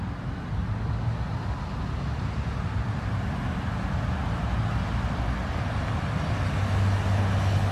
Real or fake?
real